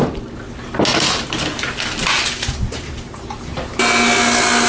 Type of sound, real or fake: real